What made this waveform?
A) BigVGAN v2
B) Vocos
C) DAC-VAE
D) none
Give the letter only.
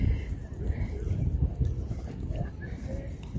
D